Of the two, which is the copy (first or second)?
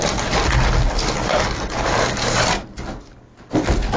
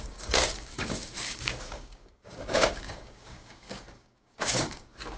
second